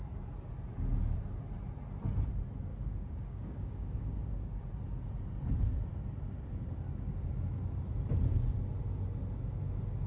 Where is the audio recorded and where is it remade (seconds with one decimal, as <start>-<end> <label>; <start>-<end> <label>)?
0.0-2.7 recorded; 2.7-4.7 remade; 4.7-10.1 recorded